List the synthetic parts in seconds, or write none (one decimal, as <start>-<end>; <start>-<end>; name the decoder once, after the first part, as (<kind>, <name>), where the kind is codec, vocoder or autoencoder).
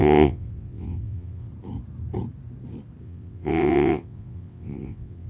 0.0-1.5 (vocoder, WaveNeXt); 3.0-5.3